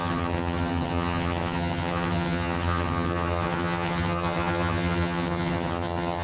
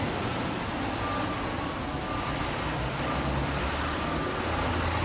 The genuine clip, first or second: second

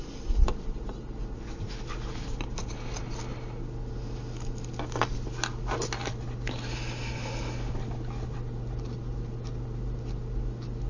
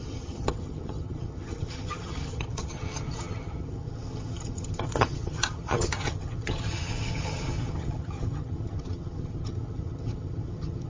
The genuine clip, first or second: first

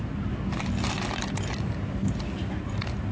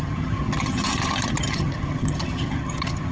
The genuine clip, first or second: first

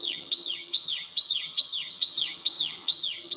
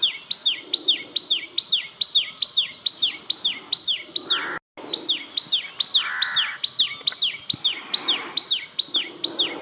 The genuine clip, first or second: second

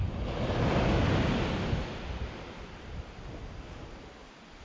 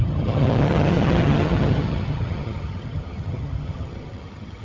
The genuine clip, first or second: first